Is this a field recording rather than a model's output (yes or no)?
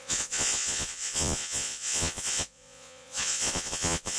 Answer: no